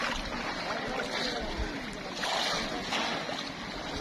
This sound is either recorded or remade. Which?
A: recorded